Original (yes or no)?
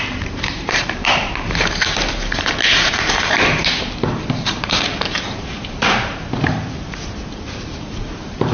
no